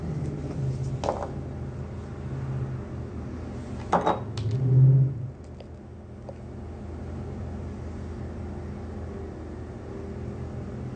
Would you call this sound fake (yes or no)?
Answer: no